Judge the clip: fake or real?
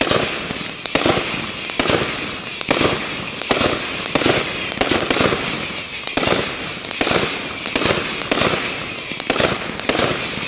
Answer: real